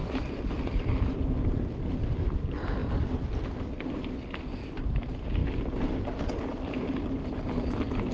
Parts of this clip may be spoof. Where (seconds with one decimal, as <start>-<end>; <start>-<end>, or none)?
0.6-2.8; 3.9-8.1